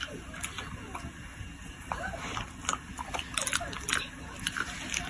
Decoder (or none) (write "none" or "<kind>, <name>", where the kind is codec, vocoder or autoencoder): none